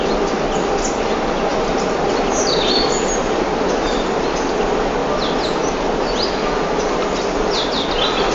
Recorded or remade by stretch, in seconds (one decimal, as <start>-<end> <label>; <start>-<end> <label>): 0.0-8.3 recorded